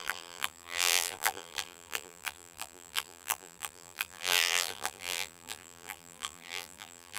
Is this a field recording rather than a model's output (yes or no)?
no